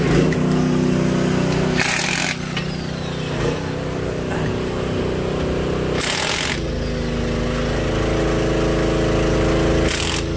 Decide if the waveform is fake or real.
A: real